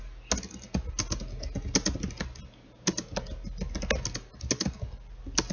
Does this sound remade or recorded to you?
recorded